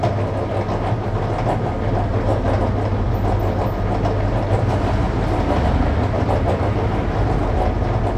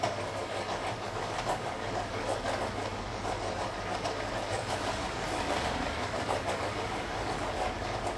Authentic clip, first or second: first